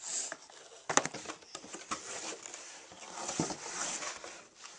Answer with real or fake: real